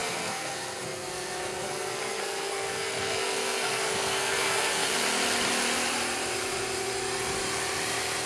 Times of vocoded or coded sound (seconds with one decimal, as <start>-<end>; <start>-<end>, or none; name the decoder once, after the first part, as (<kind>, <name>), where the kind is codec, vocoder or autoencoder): 0.0-4.9 (codec, SNAC)